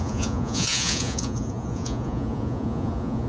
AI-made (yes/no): yes